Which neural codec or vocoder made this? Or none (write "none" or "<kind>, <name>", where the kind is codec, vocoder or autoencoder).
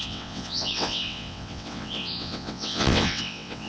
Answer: vocoder, WaveNeXt